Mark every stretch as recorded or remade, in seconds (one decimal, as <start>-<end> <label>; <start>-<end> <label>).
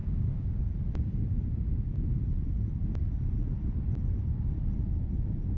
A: 0.0-0.6 remade; 0.6-5.6 recorded